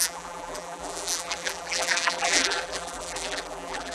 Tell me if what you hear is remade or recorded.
remade